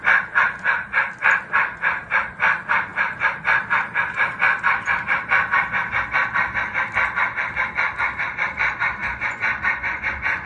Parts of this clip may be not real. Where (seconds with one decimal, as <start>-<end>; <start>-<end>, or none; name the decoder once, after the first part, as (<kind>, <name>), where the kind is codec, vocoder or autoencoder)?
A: 9.0-10.5 (vocoder, Vocos)